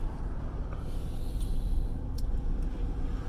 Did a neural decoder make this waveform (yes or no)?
no